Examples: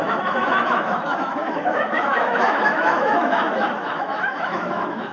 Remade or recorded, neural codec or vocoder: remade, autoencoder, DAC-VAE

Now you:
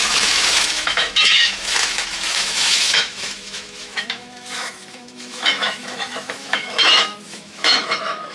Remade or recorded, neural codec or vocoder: remade, autoencoder, DAC-VAE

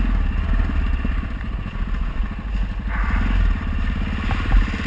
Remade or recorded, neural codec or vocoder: recorded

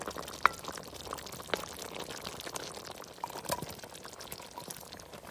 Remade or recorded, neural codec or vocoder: recorded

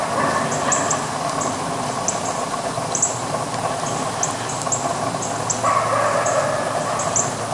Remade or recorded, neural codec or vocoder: recorded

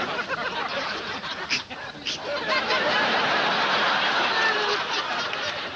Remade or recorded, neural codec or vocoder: recorded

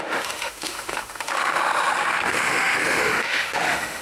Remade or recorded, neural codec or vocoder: remade, autoencoder, DAC-VAE